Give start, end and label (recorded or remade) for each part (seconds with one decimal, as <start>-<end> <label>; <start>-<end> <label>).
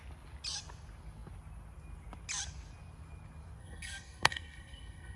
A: 0.0-3.6 recorded; 3.6-5.2 remade